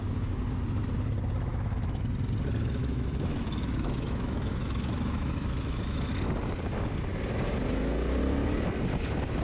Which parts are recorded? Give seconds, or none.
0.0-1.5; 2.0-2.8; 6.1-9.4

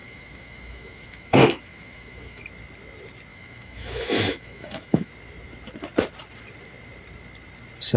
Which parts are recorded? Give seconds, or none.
2.4-3.3; 5.1-8.0

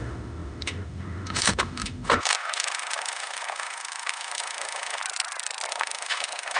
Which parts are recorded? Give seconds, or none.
5.0-5.7

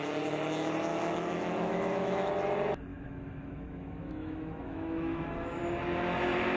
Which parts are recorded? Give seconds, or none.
0.0-0.9; 2.3-2.9; 5.6-6.6

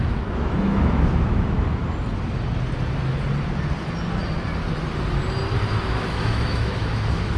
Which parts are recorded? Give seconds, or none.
1.8-5.7

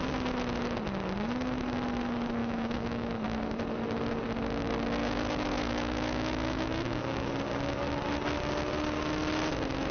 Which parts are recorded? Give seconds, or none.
0.0-2.4; 3.1-5.0; 7.3-9.9

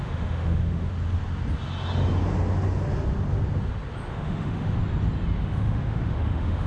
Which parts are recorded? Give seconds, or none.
0.9-4.1; 4.8-5.4

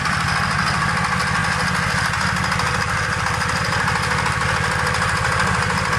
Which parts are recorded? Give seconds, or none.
0.0-6.0